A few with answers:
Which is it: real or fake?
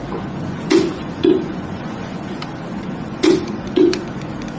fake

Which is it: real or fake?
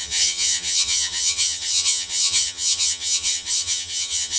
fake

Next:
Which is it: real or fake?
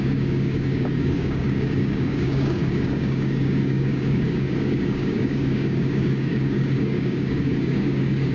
fake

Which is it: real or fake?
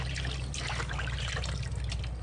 real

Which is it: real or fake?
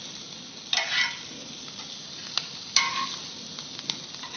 real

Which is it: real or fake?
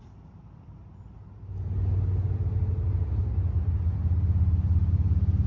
real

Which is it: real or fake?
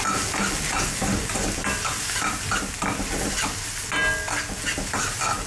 real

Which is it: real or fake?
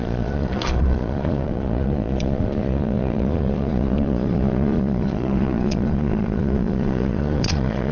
fake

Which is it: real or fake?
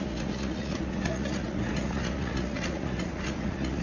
fake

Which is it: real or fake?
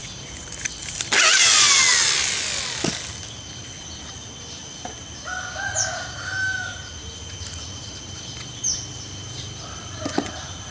real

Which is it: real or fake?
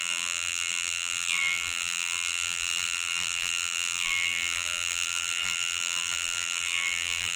fake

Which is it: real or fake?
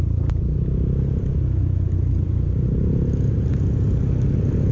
real